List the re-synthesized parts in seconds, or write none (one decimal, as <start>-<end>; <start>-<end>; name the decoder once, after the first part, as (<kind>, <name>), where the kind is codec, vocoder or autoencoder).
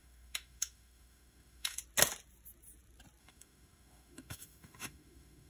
0.0-1.8 (autoencoder, DAC-VAE); 3.2-5.5